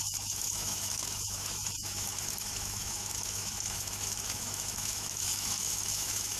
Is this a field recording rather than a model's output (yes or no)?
no